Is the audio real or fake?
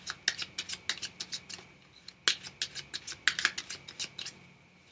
real